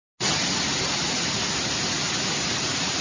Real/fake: real